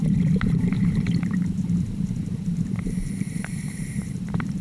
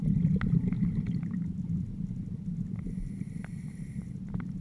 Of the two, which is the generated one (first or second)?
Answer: first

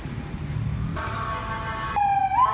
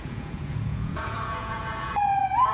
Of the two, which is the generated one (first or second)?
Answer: second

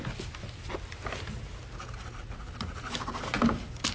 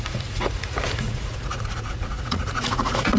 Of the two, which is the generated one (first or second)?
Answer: second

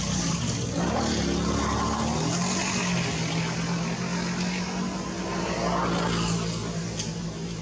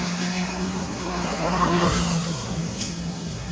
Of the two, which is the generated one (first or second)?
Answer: second